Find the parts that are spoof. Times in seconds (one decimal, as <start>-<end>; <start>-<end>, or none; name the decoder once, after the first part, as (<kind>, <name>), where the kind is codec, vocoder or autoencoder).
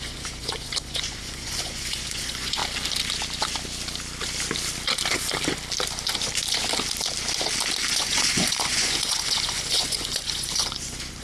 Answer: 0.0-2.6 (vocoder, Vocos); 7.9-11.2